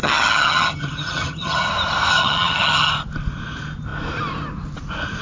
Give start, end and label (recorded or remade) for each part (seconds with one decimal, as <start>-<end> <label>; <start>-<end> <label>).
0.0-1.7 remade; 1.7-2.1 recorded; 2.1-2.9 remade; 2.9-5.2 recorded